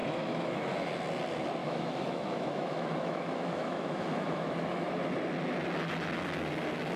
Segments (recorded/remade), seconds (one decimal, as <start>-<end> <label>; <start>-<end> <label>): 0.0-0.7 remade; 0.7-1.6 recorded; 1.6-4.9 remade; 4.9-7.0 recorded